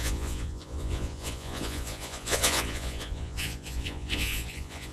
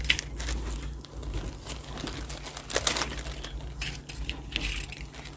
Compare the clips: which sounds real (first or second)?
second